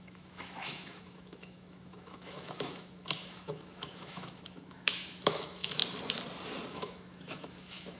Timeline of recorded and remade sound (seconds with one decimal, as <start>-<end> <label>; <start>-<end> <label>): 0.0-5.8 remade; 5.8-6.7 recorded; 6.7-8.0 remade